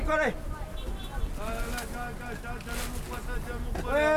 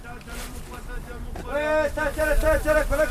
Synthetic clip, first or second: second